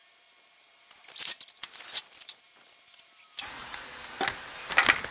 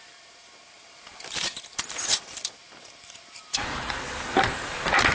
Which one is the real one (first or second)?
first